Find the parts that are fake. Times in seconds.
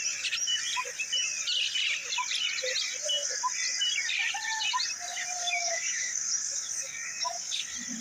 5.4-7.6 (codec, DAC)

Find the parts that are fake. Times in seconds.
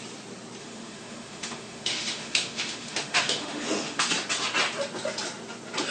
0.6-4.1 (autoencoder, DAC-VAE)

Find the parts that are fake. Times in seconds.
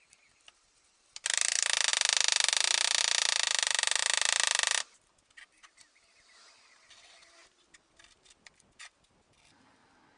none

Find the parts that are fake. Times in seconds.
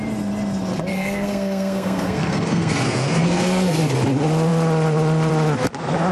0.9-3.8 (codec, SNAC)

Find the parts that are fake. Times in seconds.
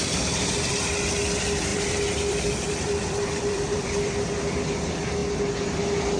1.7-4.4 (vocoder, BigVGAN v2)